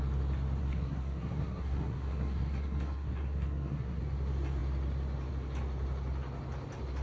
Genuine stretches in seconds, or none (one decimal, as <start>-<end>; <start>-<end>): 0.0-0.6; 4.0-7.0